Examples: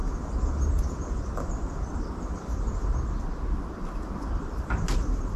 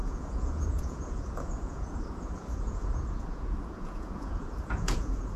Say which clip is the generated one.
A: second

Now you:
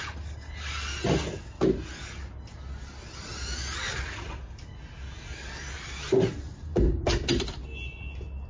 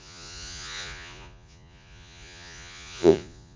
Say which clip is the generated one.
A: second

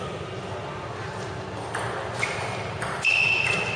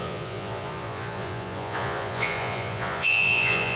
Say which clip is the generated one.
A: second